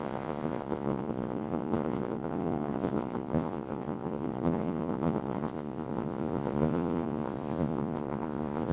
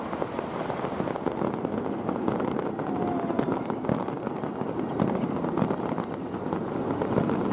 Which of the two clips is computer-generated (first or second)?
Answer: first